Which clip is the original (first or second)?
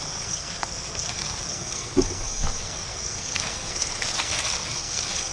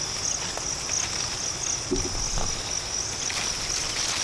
second